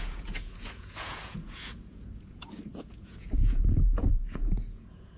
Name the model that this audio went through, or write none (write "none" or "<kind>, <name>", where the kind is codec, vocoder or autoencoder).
vocoder, Vocos